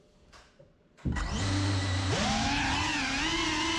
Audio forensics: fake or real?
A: real